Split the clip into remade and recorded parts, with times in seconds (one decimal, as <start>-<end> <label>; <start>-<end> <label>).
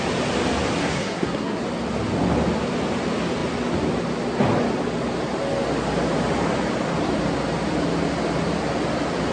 0.0-0.8 recorded; 0.8-1.6 remade; 1.6-9.3 recorded